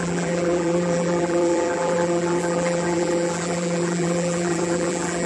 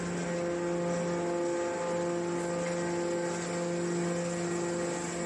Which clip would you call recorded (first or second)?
second